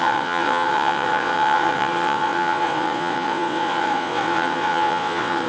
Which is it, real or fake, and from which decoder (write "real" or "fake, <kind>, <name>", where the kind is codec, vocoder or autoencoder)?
fake, vocoder, WaveNeXt